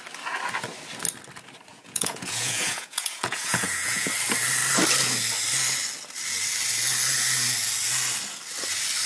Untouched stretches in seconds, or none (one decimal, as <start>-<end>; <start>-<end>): 0.0-1.7; 4.1-9.1